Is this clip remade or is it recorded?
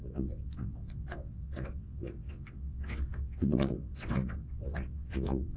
remade